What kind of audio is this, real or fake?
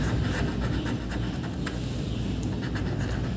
real